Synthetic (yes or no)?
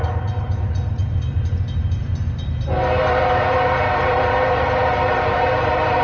yes